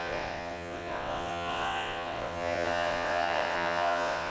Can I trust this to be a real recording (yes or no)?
no